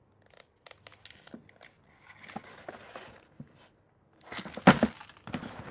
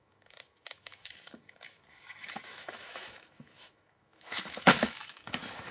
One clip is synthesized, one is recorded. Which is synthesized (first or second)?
second